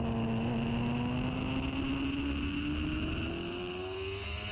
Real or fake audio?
real